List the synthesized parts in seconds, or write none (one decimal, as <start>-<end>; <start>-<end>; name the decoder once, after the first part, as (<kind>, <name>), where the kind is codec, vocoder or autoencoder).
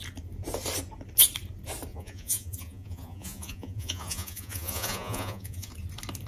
1.9-5.7 (vocoder, Vocos)